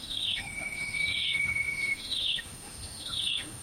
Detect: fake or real fake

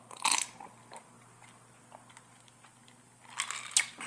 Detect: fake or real real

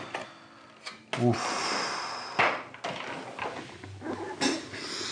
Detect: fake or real real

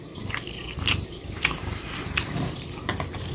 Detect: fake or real fake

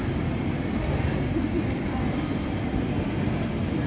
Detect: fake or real real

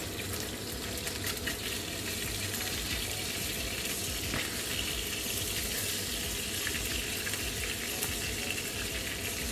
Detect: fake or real real